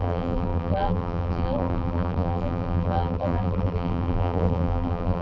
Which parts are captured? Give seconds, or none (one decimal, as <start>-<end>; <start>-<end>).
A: none